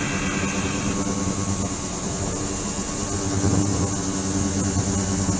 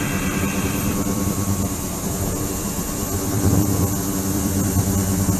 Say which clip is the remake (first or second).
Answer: second